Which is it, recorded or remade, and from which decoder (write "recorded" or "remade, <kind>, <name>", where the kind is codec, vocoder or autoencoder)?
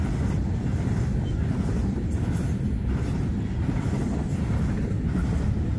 recorded